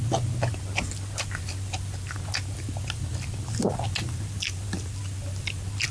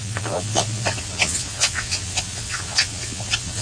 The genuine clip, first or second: first